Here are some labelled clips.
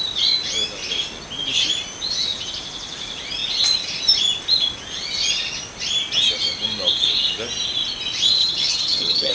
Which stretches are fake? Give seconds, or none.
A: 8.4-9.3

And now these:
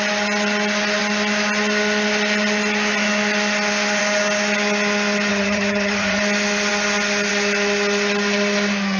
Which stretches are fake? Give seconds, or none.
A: 5.3-6.2